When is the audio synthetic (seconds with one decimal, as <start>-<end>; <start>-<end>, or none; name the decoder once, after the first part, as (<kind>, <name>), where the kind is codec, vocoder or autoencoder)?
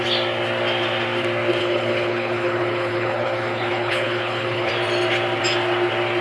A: 1.6-4.7 (codec, HILCodec)